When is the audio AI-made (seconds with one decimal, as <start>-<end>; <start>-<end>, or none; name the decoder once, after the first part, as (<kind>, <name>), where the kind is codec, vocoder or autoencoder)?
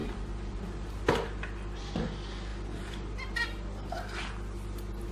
none